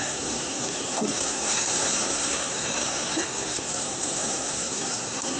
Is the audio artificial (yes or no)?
yes